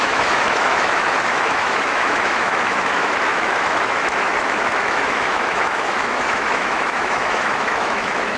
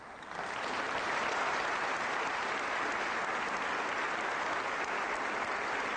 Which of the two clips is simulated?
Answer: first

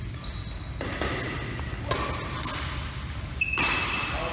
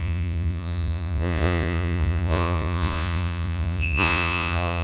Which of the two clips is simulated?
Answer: second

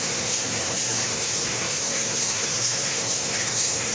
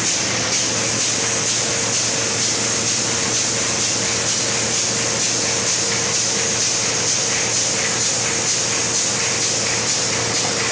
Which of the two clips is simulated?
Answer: first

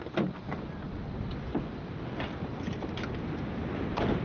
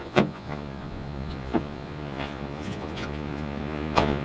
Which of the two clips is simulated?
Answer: second